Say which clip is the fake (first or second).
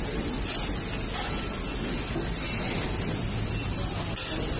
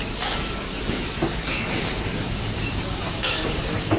second